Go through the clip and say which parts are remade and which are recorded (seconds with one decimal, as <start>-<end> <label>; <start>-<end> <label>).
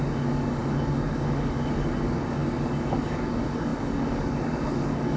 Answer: 0.0-5.2 remade